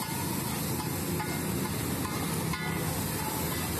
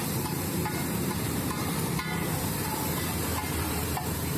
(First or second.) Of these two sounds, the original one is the first